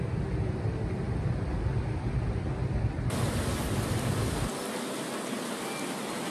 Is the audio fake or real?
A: real